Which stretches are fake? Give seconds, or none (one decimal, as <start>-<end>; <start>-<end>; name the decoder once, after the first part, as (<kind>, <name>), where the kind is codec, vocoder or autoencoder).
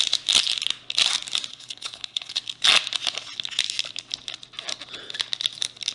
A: 1.5-2.4 (codec, HILCodec)